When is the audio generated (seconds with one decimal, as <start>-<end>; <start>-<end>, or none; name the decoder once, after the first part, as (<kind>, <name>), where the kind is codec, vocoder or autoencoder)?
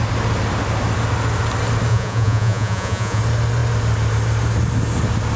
1.9-3.2 (vocoder, Vocos)